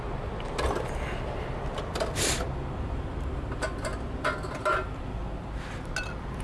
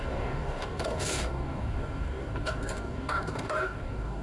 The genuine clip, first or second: first